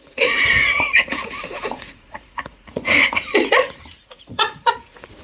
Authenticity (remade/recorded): remade